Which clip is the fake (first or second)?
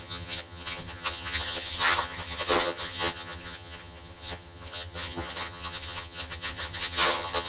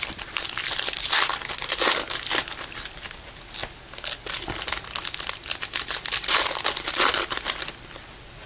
first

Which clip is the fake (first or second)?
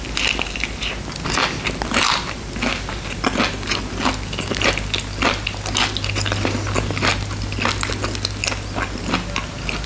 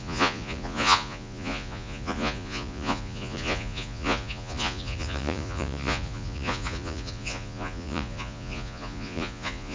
second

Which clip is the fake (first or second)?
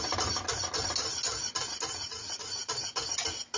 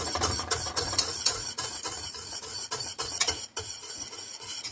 second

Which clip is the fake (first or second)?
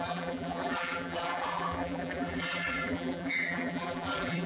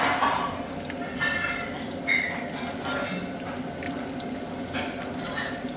first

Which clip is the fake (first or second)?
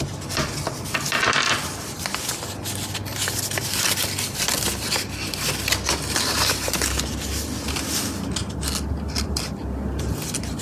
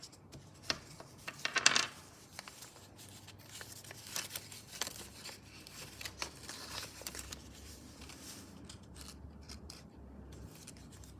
second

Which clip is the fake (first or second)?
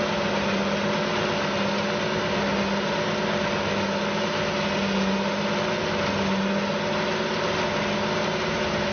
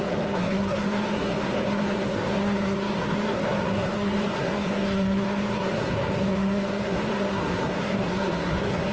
second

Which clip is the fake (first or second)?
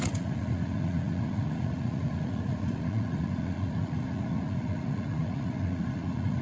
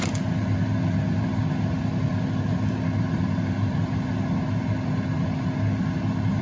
first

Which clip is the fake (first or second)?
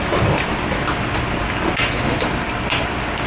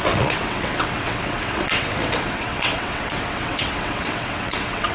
second